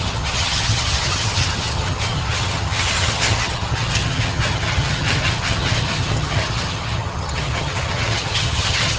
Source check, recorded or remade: remade